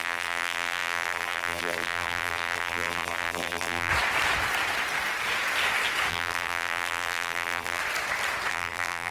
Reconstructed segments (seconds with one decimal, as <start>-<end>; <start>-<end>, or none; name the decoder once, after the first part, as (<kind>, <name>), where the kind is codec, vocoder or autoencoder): 0.0-3.9 (vocoder, BigVGAN v2); 6.1-7.8; 8.5-9.1